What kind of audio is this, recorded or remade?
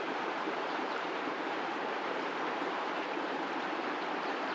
remade